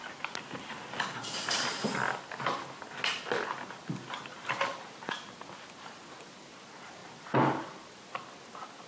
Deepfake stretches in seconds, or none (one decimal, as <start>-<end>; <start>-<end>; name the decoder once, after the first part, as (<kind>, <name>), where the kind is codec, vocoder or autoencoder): 7.0-7.9 (vocoder, BigVGAN v2)